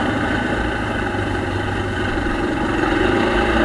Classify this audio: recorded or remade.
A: remade